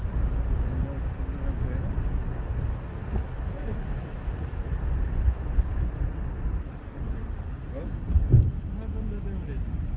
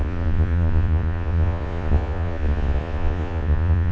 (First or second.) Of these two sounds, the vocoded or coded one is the second